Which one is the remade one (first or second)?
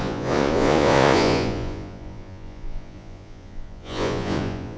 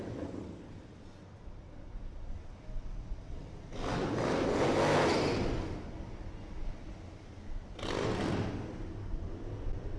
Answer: first